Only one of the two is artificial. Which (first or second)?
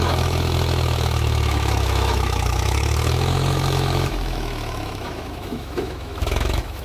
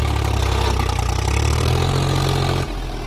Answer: first